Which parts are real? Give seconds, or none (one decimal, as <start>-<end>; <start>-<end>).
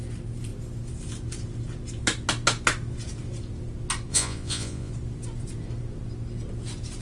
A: 0.0-4.1; 4.9-7.0